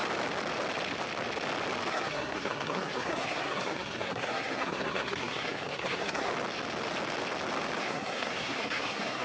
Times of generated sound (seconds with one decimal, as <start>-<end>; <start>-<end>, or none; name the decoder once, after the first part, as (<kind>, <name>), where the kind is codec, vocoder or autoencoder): 1.9-6.3 (codec, SNAC); 7.8-9.2